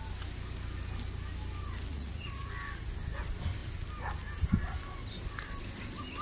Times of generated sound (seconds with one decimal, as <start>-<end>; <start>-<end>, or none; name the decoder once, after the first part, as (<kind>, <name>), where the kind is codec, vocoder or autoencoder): 1.9-2.5 (vocoder, Vocos)